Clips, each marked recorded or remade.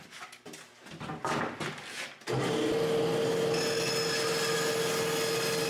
recorded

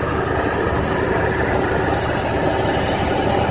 recorded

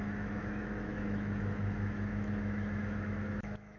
remade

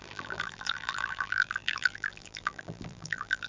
remade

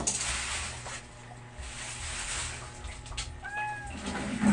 recorded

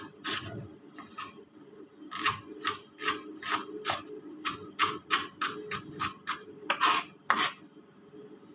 recorded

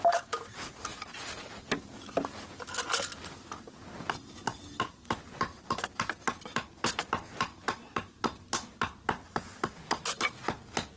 recorded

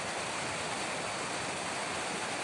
recorded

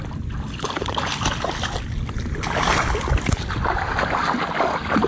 recorded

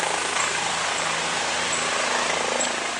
recorded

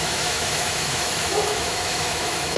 remade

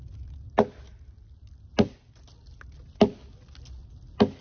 recorded